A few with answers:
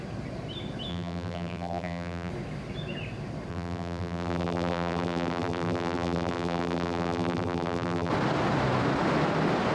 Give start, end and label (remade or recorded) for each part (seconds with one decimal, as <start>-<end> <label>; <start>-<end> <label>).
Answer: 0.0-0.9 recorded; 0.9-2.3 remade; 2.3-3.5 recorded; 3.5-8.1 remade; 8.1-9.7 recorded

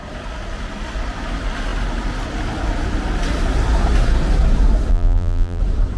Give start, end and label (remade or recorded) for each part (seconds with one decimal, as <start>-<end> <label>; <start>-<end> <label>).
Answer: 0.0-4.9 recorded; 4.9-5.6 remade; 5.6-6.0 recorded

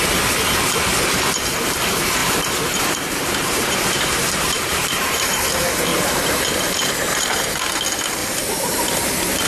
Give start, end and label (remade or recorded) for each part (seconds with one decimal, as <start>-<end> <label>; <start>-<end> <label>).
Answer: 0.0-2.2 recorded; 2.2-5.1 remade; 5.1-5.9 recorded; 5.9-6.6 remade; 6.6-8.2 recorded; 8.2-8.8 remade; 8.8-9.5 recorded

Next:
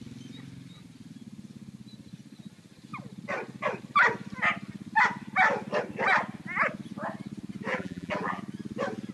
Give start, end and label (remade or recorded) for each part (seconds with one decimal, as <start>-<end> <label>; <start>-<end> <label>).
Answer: 0.0-7.7 recorded; 7.7-8.4 remade; 8.4-9.1 recorded

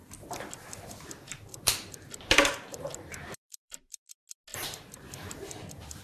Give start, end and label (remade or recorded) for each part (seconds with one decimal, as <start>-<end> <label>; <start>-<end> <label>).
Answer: 0.0-1.5 recorded; 1.5-4.0 remade; 4.0-4.5 recorded; 4.5-5.3 remade; 5.3-6.0 recorded